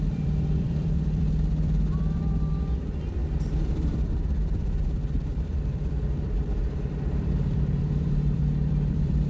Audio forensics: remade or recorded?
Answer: remade